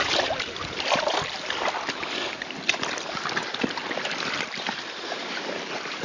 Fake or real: real